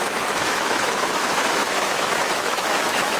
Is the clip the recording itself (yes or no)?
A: no